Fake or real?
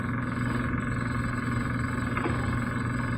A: real